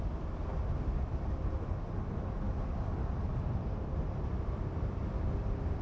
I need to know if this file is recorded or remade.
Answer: recorded